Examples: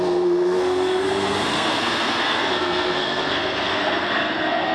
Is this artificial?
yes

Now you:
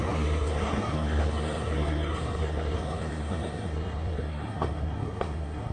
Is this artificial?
yes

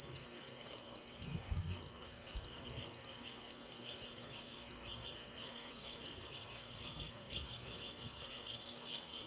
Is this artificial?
yes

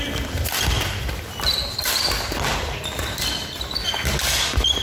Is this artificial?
no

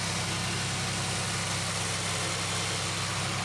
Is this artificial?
no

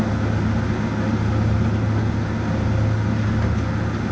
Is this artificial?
no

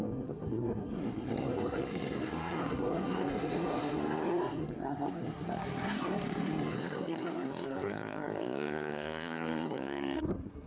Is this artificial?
yes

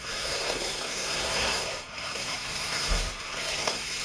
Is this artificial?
yes